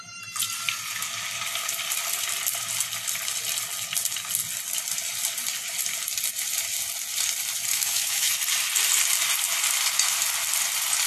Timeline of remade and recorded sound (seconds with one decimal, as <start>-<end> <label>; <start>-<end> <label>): 0.0-7.7 recorded; 7.7-8.3 remade; 8.3-11.1 recorded